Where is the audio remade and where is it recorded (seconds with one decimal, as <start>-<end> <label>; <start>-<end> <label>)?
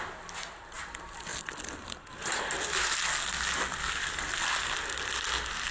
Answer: 0.0-1.3 recorded; 1.3-2.4 remade; 2.4-3.7 recorded; 3.7-4.8 remade; 4.8-5.7 recorded